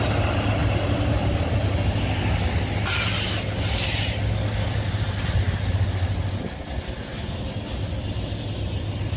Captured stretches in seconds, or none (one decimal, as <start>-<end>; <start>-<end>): 0.0-0.6; 1.5-9.2